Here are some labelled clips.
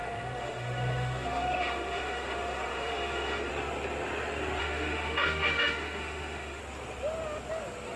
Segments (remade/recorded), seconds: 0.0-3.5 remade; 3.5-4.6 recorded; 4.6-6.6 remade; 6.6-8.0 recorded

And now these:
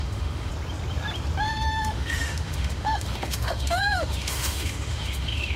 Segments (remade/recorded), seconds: 0.0-0.5 remade; 0.5-1.4 recorded; 1.4-5.6 remade

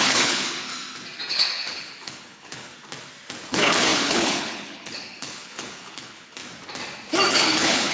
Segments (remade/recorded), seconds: 0.0-0.7 remade; 0.7-1.3 recorded; 1.3-2.7 remade; 2.7-3.5 recorded; 3.5-6.4 remade; 6.4-7.3 recorded; 7.3-7.9 remade

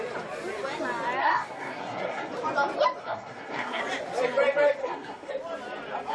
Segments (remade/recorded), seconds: 0.0-1.2 recorded; 1.2-2.3 remade; 2.3-3.0 recorded; 3.0-3.8 remade; 3.8-4.8 recorded; 4.8-5.3 remade; 5.3-6.1 recorded

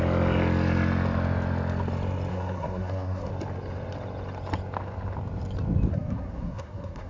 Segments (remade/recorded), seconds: 0.0-2.3 recorded; 2.3-3.3 remade; 3.3-5.9 recorded; 5.9-7.1 remade

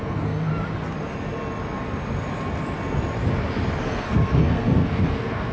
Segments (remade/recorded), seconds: 0.0-0.5 remade; 0.5-3.8 recorded; 3.8-5.5 remade

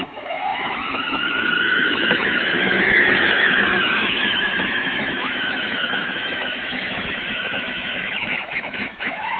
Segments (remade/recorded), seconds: 0.0-9.4 remade

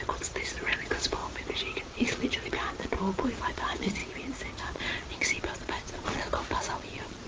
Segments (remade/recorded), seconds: 0.0-1.2 remade; 1.2-1.8 recorded; 1.8-4.0 remade; 4.0-4.6 recorded; 4.6-7.3 remade